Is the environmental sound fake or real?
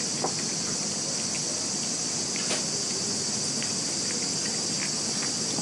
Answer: real